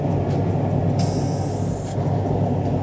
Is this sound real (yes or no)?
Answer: yes